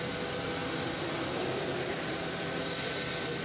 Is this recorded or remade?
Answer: recorded